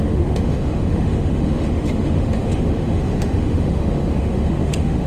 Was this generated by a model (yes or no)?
yes